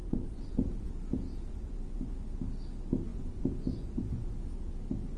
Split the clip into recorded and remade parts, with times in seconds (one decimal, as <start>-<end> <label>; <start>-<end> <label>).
0.0-0.9 remade; 0.9-1.5 recorded; 1.5-2.1 remade; 2.1-3.1 recorded; 3.1-4.4 remade; 4.4-5.2 recorded